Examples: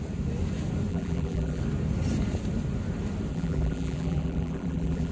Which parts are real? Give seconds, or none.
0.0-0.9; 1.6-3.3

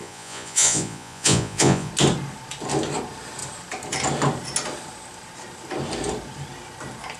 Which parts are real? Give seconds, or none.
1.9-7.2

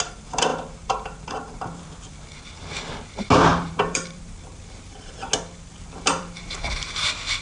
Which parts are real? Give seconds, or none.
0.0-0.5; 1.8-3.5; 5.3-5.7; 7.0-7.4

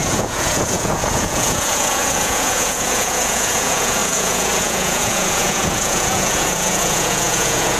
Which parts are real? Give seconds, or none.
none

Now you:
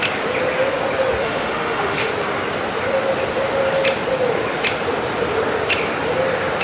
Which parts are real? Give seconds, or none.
0.0-1.2; 2.1-6.6

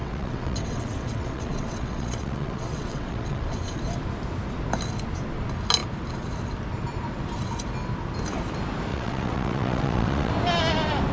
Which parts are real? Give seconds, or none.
3.8-8.9; 10.3-11.1